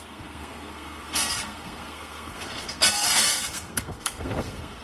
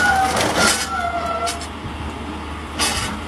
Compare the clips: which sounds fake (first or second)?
first